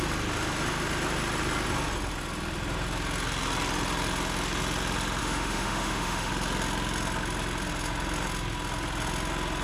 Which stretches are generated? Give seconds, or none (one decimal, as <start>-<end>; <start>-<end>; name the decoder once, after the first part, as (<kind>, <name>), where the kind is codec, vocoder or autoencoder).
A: 5.2-6.3 (autoencoder, DAC-VAE)

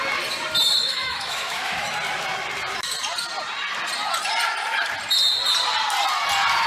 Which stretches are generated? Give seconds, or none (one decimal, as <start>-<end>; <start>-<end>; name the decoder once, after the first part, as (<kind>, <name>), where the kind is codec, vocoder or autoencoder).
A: 0.8-1.9 (autoencoder, DAC-VAE)

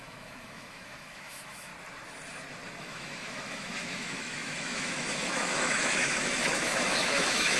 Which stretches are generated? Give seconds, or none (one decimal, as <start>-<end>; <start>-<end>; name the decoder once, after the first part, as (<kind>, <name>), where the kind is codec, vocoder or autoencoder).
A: 0.0-1.7 (autoencoder, DAC-VAE); 2.8-7.6

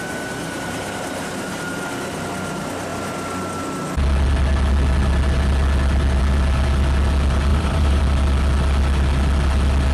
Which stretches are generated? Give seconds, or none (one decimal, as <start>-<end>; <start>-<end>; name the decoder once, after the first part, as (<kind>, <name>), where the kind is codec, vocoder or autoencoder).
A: 0.4-1.7 (vocoder, BigVGAN v2); 7.5-8.0